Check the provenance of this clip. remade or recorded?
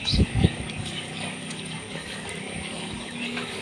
remade